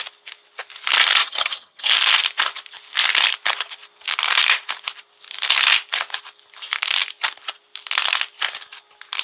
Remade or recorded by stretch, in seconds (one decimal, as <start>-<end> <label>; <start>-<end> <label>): 0.0-1.2 recorded; 1.2-1.9 remade; 1.9-9.2 recorded